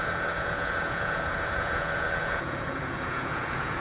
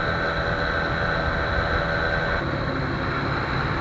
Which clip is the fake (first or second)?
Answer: first